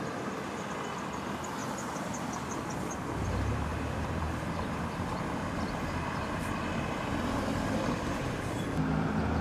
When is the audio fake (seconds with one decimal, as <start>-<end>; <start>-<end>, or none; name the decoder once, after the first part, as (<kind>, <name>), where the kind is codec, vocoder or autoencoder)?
1.6-2.4 (vocoder, BigVGAN v2); 3.7-8.5